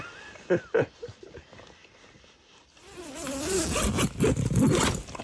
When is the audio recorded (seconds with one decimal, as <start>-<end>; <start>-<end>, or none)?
0.0-5.2